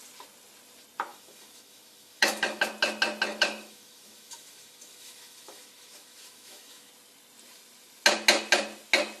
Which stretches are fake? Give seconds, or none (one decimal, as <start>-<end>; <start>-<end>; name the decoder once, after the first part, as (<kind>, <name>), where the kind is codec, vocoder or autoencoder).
1.1-2.6 (autoencoder, DAC-VAE); 3.3-6.9